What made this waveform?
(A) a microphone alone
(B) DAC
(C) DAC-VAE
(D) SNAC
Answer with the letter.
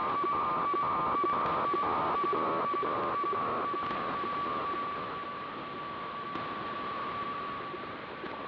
A